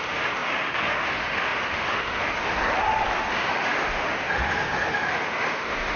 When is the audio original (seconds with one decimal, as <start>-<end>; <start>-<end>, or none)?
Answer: 2.6-3.3